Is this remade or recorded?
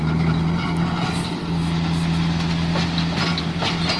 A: recorded